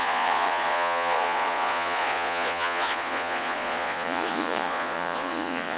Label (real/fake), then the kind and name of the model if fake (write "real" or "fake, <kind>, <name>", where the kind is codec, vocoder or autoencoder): fake, vocoder, Vocos